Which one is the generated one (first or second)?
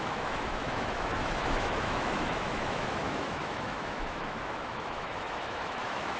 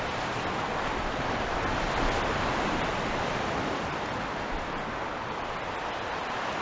first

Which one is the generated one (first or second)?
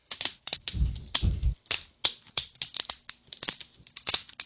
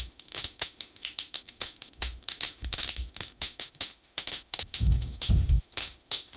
second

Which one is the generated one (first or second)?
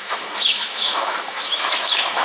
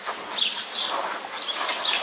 first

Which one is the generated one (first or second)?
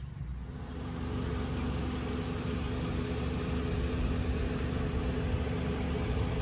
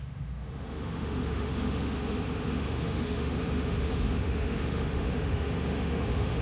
second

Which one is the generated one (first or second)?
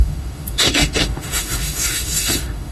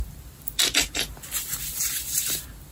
first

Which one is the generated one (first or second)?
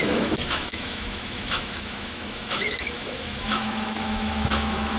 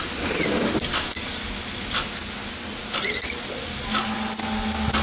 first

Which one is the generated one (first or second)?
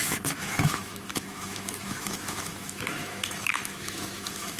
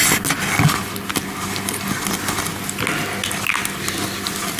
first